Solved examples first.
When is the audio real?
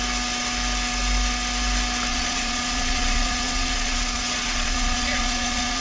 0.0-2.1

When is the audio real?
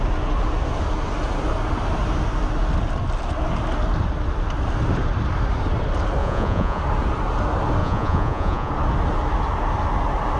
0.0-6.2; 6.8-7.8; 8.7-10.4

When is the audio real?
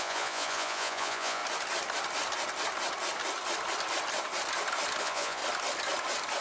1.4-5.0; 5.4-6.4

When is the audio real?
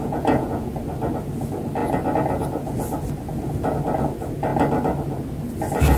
0.7-6.0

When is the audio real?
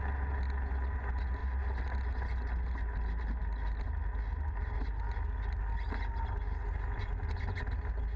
0.0-8.2